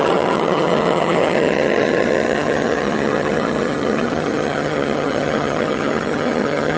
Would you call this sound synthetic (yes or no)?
yes